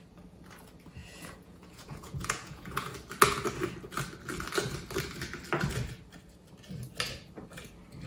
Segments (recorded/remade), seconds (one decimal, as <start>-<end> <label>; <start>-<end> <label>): 0.0-1.0 recorded; 1.0-2.9 remade; 2.9-8.1 recorded